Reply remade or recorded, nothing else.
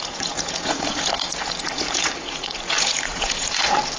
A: remade